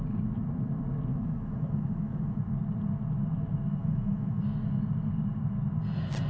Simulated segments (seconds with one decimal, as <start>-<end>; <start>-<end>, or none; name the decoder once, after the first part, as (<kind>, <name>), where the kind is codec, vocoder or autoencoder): 1.1-2.4 (autoencoder, DAC-VAE); 3.8-4.4